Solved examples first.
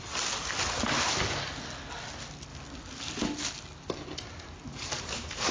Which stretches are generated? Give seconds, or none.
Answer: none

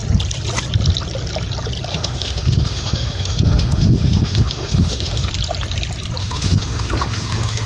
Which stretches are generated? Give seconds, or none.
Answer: 1.9-5.3 (autoencoder, DAC-VAE); 6.2-7.7

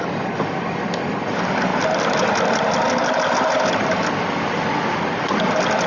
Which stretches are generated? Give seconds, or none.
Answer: none